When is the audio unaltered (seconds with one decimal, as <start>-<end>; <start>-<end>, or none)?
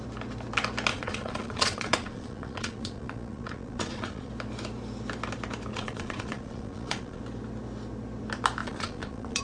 0.0-0.9; 4.3-5.7; 7.2-8.6